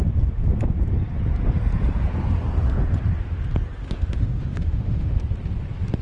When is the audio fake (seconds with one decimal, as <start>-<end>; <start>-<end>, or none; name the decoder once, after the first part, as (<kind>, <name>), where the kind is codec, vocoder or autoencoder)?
3.8-5.2 (autoencoder, DAC-VAE)